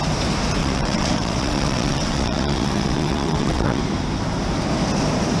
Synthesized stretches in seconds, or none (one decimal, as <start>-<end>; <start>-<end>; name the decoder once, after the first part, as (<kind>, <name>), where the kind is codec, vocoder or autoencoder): 0.6-3.8 (vocoder, WaveNeXt)